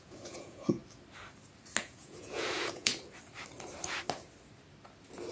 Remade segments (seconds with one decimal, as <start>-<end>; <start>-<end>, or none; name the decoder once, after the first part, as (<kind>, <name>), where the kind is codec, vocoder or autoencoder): 0.0-0.8 (vocoder, Vocos); 1.8-2.9